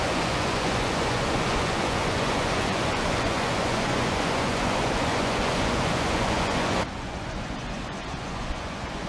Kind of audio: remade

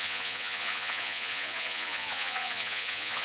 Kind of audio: remade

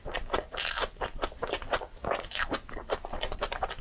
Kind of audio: recorded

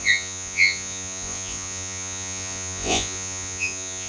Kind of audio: remade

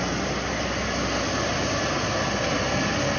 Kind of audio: recorded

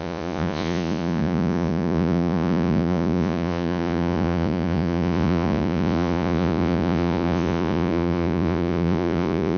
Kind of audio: remade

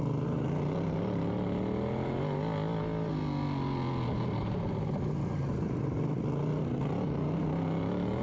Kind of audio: recorded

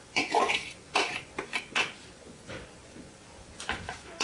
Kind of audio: remade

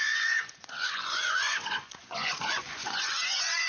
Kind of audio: remade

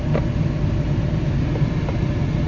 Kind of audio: recorded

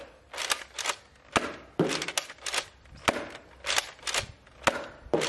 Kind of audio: recorded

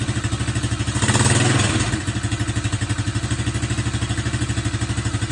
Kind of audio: recorded